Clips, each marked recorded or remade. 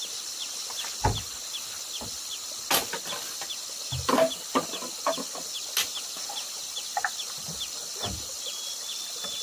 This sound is recorded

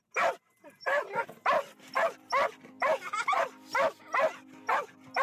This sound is recorded